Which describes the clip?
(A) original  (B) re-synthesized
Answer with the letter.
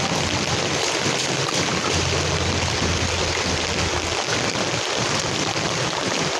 A